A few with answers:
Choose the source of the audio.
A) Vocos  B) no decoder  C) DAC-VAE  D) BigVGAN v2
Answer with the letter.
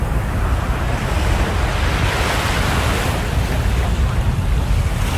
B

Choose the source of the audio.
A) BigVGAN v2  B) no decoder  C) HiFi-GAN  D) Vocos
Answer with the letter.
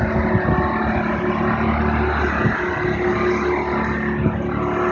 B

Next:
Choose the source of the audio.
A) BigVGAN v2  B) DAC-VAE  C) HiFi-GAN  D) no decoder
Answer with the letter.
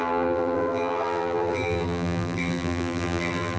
A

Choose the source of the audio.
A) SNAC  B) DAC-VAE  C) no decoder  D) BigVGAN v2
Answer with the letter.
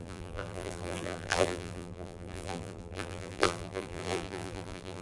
D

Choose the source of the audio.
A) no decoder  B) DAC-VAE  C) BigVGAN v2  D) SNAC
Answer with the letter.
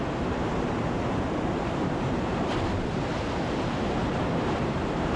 C